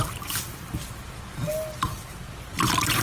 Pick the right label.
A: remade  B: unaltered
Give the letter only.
B